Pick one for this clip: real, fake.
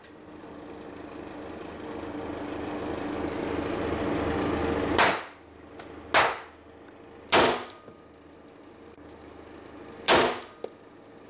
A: real